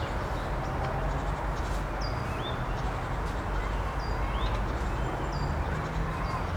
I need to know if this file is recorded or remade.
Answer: recorded